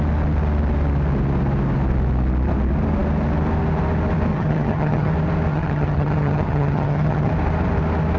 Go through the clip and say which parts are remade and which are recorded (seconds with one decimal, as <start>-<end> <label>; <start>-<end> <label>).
0.0-4.3 recorded; 4.3-5.1 remade; 5.1-5.5 recorded; 5.5-7.3 remade; 7.3-8.2 recorded